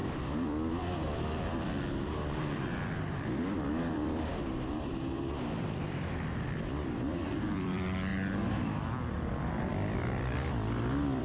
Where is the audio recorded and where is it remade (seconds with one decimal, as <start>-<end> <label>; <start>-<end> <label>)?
0.0-4.3 remade; 4.3-5.6 recorded; 5.6-11.2 remade